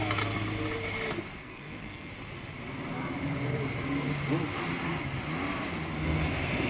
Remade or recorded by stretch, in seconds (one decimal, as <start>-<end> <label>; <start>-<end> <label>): 0.0-1.4 recorded; 1.4-2.1 remade; 2.1-6.7 recorded